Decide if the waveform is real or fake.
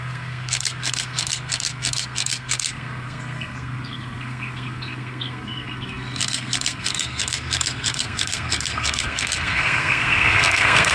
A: fake